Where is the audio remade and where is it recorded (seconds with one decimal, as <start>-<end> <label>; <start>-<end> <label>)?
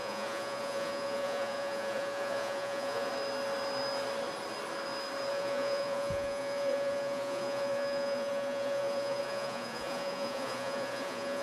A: 0.0-3.1 remade; 3.1-5.3 recorded; 5.3-11.4 remade